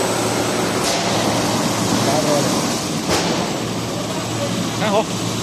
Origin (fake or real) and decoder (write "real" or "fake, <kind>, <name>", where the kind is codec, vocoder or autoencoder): real